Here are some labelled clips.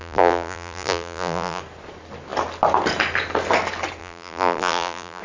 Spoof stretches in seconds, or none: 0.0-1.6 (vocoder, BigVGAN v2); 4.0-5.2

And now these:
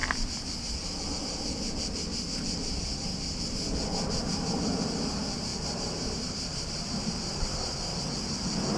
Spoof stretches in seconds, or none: 5.5-8.0 (vocoder, BigVGAN v2)

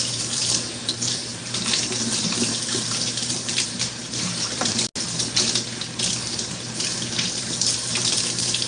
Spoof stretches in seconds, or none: 0.0-4.9 (vocoder, BigVGAN v2); 6.2-8.7

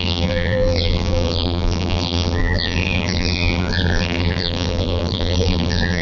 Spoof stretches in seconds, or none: 0.0-6.0 (vocoder, BigVGAN v2)